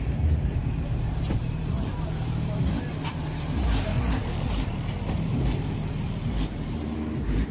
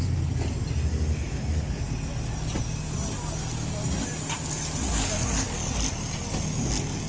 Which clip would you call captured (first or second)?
second